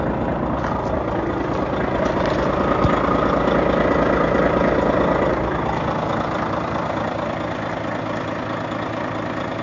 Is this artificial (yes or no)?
no